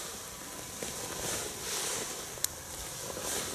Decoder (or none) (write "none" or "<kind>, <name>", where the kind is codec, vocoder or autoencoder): none